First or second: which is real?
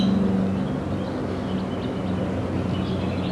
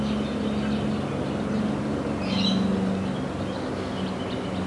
first